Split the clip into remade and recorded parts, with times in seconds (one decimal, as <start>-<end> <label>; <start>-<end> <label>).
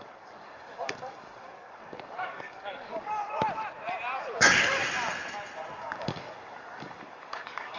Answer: 0.0-3.2 remade; 3.2-4.2 recorded; 4.2-4.8 remade; 4.8-5.8 recorded; 5.8-7.8 remade